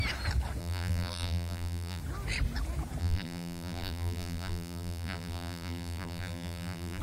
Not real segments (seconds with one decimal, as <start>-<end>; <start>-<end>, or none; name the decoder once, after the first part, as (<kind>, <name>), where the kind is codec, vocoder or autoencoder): 0.6-2.0 (vocoder, BigVGAN v2); 3.0-7.0